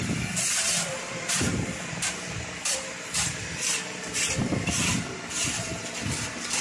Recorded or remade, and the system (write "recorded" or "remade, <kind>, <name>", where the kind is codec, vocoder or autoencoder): remade, vocoder, BigVGAN v2